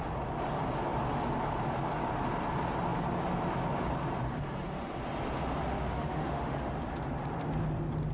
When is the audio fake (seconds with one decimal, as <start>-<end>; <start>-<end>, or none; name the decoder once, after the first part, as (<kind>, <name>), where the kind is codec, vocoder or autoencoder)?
5.7-6.7 (autoencoder, DAC-VAE)